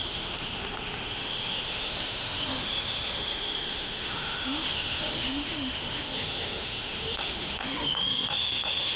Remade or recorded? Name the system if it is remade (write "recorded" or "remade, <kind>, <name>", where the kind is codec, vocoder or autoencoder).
remade, autoencoder, DAC-VAE